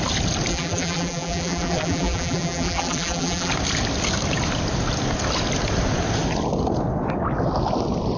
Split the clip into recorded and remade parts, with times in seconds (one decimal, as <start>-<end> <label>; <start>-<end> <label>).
0.0-0.5 recorded; 0.5-3.5 remade; 3.5-8.2 recorded